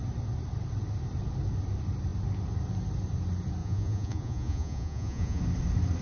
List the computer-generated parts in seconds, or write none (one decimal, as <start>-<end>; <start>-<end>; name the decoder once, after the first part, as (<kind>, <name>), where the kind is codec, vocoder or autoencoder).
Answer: 3.6-5.4 (vocoder, Vocos)